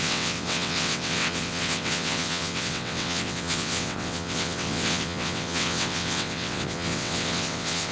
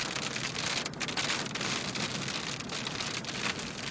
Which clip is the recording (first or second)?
second